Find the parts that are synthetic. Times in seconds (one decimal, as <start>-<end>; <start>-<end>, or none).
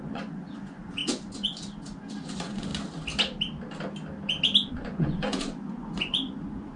0.0-2.7; 4.7-6.8